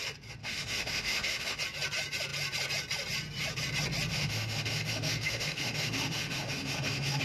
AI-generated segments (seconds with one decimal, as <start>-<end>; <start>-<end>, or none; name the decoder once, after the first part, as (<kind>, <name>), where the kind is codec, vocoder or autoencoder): 0.4-1.6 (autoencoder, DAC-VAE); 4.1-7.2